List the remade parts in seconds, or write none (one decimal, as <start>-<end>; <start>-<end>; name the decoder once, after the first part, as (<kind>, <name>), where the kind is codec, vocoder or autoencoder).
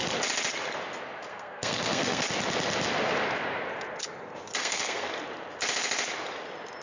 1.3-2.2 (codec, SNAC); 4.6-5.1